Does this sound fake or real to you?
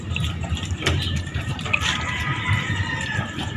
fake